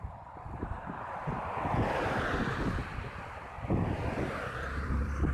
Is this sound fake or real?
fake